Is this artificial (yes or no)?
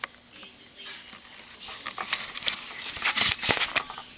no